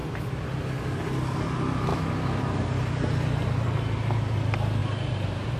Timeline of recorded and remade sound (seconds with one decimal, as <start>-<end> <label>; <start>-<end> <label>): 0.0-1.9 recorded; 1.9-2.4 remade; 2.4-5.6 recorded